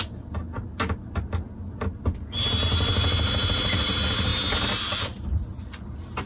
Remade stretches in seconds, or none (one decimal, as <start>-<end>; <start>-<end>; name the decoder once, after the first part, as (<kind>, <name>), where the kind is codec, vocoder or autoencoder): none